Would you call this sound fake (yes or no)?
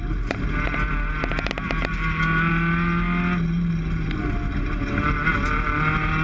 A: no